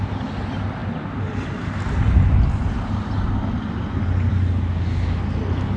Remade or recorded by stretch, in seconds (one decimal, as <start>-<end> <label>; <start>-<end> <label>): 0.0-5.8 recorded